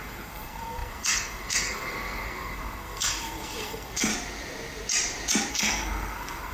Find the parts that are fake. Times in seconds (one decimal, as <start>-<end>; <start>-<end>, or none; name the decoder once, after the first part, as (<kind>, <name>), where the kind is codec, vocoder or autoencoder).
0.0-4.1 (codec, SNAC); 5.5-6.5